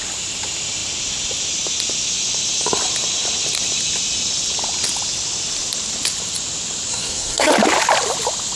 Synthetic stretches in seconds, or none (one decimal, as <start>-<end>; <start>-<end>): 6.9-7.5